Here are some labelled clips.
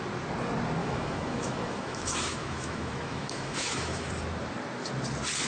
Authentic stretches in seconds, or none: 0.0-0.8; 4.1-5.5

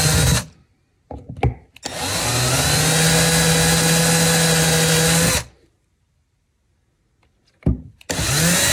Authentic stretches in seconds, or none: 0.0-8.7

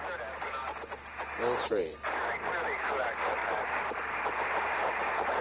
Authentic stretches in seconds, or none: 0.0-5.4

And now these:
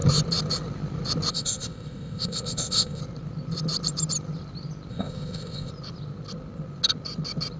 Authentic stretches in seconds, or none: 0.0-1.3; 3.0-4.9; 5.7-7.6